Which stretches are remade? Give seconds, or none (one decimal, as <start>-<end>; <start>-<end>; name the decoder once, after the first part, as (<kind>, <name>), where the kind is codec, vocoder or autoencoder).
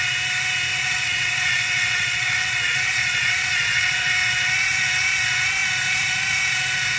0.7-4.1 (vocoder, WaveNeXt)